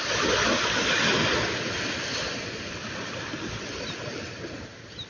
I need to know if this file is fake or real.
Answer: real